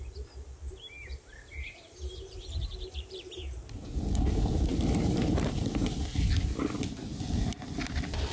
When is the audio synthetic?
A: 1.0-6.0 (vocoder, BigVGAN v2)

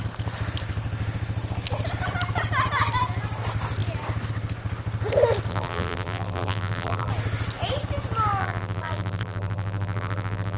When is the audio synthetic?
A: 5.5-7.1 (vocoder, BigVGAN v2); 8.4-10.6

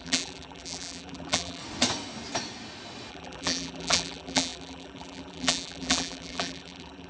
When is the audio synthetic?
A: 0.0-1.6 (vocoder, BigVGAN v2); 3.1-7.1

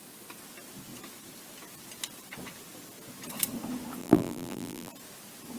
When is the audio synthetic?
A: 4.0-4.9 (vocoder, BigVGAN v2)